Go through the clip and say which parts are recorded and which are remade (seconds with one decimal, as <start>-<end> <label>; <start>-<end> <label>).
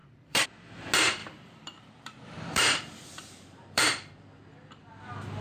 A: 0.0-0.7 remade; 0.7-1.2 recorded; 1.2-4.4 remade; 4.4-5.4 recorded